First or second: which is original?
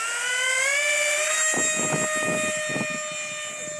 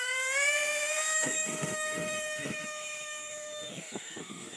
first